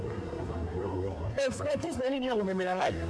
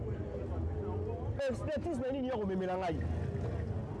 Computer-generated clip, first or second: first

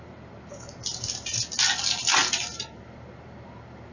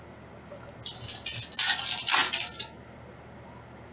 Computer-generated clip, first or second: first